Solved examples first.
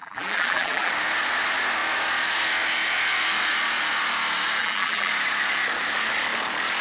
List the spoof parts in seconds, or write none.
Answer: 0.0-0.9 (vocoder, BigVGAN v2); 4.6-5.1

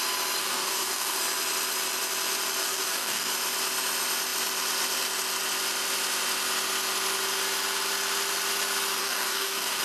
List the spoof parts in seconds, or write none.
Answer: 0.4-1.2 (codec, DAC); 2.6-3.3; 9.0-9.8

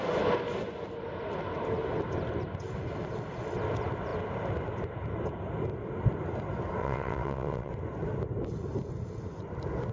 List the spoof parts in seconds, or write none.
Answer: 6.8-7.7 (vocoder, WaveNeXt)

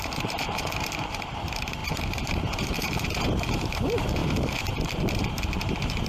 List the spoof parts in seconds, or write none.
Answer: 0.0-6.1 (vocoder, BigVGAN v2)